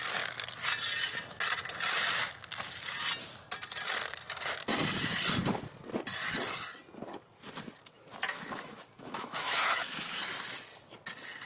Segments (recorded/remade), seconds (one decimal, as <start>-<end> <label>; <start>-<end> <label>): 0.0-8.3 recorded; 8.3-10.2 remade; 10.2-11.5 recorded